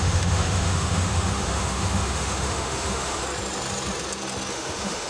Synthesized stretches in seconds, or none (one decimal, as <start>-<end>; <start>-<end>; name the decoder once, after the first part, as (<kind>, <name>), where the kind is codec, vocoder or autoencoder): 0.0-3.2 (autoencoder, DAC-VAE); 4.5-5.1